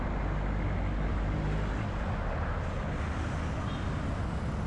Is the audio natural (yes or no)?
yes